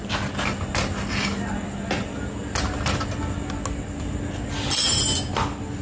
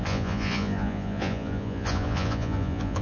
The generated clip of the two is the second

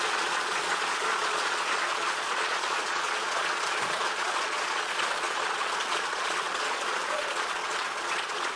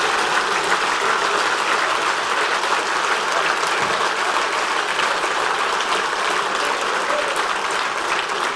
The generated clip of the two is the first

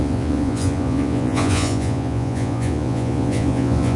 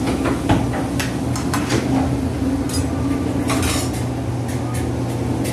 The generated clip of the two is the first